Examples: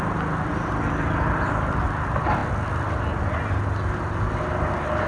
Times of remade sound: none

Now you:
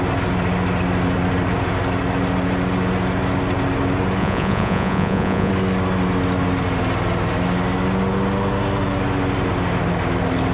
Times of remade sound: 4.2-5.5 (vocoder, Vocos)

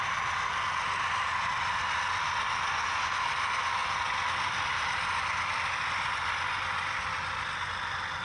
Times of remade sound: none

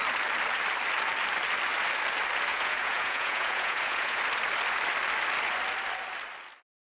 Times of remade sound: 2.5-4.2 (vocoder, Vocos)

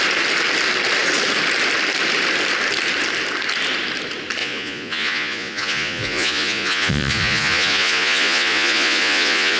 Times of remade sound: 4.4-9.6 (vocoder, Vocos)

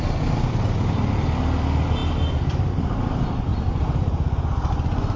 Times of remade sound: none

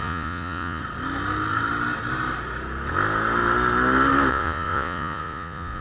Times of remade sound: 0.0-0.8 (vocoder, Vocos); 4.3-5.8